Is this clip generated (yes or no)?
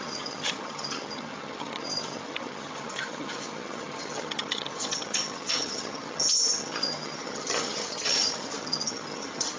yes